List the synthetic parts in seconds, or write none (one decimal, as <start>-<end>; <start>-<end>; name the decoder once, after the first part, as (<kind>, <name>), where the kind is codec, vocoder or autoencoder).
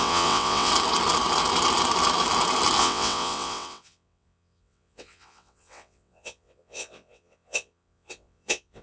0.0-0.7 (vocoder, WaveNeXt); 2.8-8.8